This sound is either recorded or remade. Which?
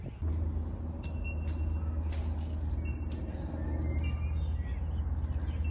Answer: recorded